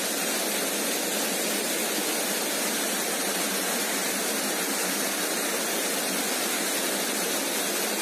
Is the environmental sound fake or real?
real